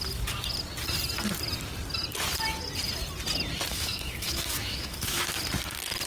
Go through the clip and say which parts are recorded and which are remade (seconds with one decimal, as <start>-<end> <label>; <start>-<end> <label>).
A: 0.0-3.7 recorded; 3.7-5.4 remade; 5.4-6.1 recorded